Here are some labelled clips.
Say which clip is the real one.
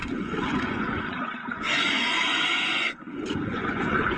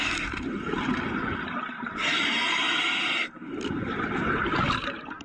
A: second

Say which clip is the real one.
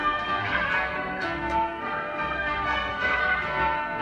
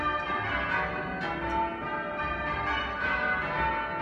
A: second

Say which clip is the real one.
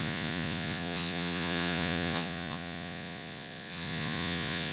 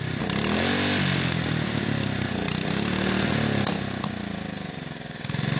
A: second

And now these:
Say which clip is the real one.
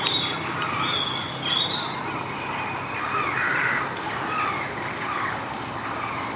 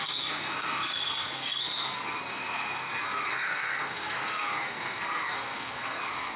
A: first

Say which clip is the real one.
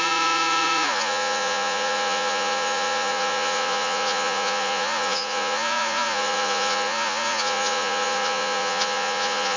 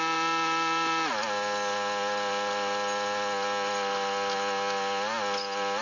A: second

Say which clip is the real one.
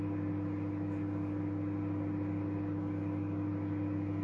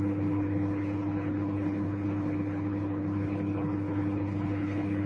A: first